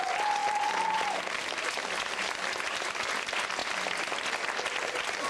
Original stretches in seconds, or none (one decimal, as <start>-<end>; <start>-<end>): 0.0-0.4; 3.1-3.6; 4.3-5.3

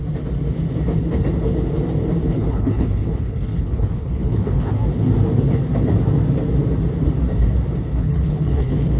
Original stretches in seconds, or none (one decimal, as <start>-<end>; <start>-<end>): 0.0-2.3; 4.7-7.9

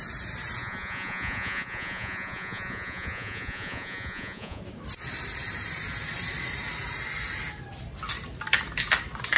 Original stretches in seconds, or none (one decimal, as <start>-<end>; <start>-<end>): 0.0-0.6; 4.6-9.4